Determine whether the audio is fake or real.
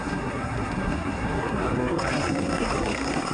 fake